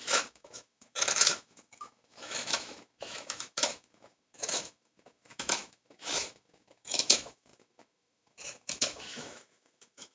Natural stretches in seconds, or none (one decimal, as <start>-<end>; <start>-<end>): none